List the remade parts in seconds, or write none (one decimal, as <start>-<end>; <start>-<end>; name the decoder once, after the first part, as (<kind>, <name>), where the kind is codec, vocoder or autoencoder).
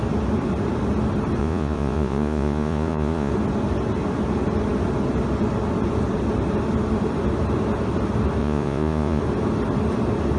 1.4-3.3 (vocoder, Vocos); 8.4-9.2